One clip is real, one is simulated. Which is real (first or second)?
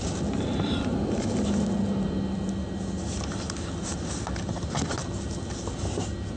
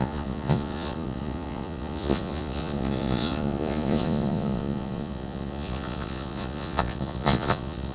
first